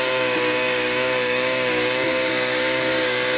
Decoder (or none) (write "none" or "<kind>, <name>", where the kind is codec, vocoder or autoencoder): codec, DAC